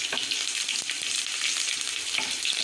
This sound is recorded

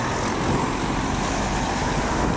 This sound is recorded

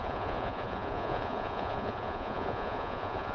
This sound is remade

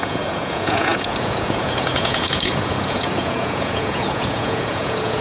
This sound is remade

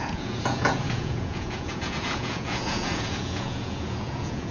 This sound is remade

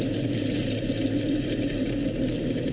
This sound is recorded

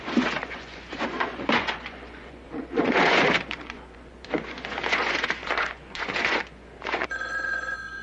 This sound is remade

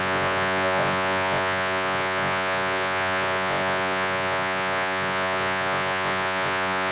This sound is remade